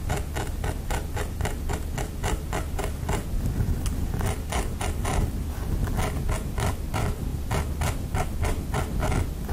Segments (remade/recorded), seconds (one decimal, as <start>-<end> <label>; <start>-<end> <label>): 0.0-9.5 recorded